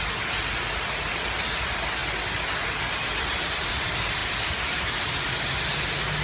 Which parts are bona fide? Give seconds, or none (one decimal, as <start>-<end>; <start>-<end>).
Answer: 0.0-6.2

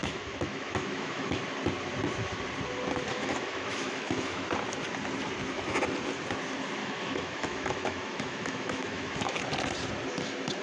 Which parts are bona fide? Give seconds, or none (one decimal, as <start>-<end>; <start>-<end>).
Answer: 1.4-3.1; 4.5-6.8; 9.4-10.6

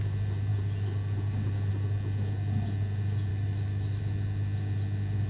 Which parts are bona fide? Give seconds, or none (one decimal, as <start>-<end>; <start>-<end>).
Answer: 0.0-3.3; 4.0-5.3

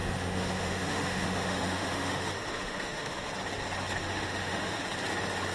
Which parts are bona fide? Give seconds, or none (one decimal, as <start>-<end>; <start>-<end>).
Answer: 3.3-4.0; 4.8-5.5

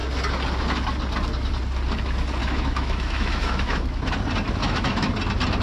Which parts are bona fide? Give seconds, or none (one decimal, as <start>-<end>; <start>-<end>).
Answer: 0.0-2.4; 4.1-4.6; 5.1-5.6

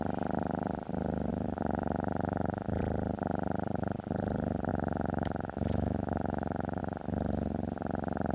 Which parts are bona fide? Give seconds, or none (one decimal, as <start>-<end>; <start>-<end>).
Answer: 0.0-1.3; 2.8-4.7; 6.8-8.3